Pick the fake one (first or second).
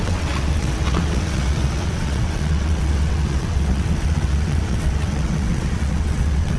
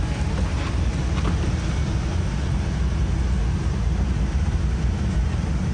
first